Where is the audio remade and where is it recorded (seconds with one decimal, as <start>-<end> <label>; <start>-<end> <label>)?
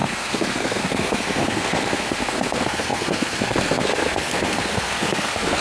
0.0-5.6 remade